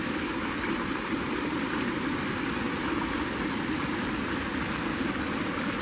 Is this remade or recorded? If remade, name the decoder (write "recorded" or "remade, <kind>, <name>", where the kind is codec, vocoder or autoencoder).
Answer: recorded